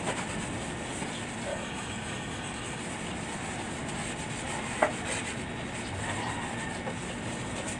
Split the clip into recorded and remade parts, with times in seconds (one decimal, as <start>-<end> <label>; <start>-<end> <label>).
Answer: 0.0-1.5 recorded; 1.5-2.8 remade; 2.8-7.8 recorded